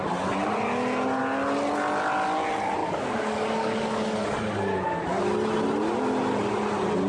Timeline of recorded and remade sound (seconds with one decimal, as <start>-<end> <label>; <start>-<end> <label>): 0.0-2.8 recorded; 2.8-5.2 remade; 5.2-7.1 recorded

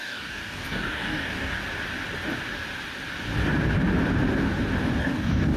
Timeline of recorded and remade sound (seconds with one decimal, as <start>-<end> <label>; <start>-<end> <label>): 0.0-1.6 remade; 1.6-5.0 recorded; 5.0-5.6 remade

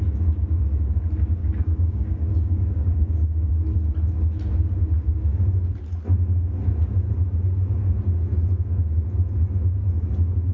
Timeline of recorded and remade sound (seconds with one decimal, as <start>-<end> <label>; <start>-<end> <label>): 0.0-1.4 recorded; 1.4-3.5 remade; 3.5-10.5 recorded

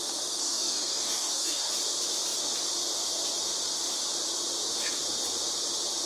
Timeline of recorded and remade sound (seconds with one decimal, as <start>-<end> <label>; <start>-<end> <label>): 0.0-0.4 recorded; 0.4-1.7 remade; 1.7-6.1 recorded